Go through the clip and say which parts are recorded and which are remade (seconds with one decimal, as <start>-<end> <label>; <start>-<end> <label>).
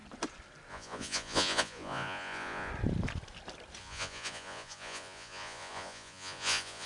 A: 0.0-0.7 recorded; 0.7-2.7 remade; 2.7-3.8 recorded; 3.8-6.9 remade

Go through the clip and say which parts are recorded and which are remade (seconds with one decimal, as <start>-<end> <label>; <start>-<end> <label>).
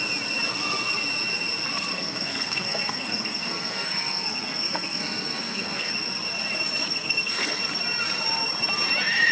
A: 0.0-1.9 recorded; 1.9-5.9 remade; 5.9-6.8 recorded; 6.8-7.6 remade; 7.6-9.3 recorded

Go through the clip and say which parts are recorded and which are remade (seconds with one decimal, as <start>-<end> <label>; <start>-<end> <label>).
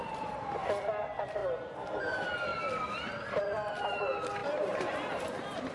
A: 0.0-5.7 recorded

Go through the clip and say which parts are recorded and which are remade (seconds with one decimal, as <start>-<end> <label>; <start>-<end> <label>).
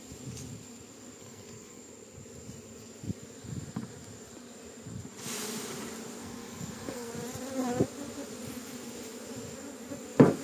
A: 0.0-1.2 recorded; 1.2-1.8 remade; 1.8-6.2 recorded; 6.2-7.1 remade; 7.1-10.4 recorded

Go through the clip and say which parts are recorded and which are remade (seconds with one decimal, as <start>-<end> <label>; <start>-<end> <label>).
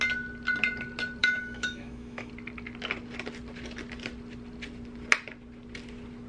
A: 0.0-1.2 recorded; 1.2-2.3 remade; 2.3-6.3 recorded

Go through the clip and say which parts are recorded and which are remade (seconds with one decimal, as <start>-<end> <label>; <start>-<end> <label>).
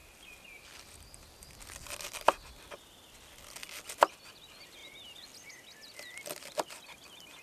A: 0.0-7.4 recorded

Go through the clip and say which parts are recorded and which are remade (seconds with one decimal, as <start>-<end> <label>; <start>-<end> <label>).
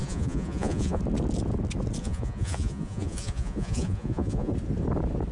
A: 0.0-1.0 remade; 1.0-2.0 recorded; 2.0-4.5 remade; 4.5-5.3 recorded